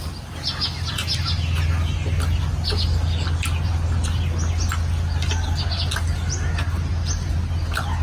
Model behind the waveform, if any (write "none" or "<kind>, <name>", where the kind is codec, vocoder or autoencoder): none